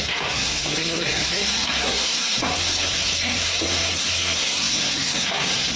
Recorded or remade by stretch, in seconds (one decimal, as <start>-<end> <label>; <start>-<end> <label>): 0.0-5.8 remade